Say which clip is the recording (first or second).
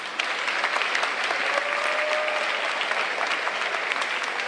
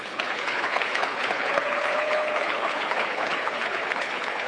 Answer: first